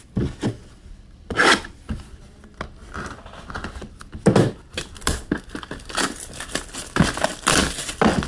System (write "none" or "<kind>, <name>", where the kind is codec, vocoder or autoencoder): none